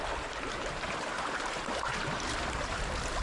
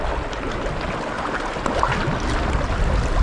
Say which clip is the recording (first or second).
second